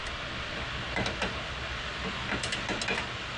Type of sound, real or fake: real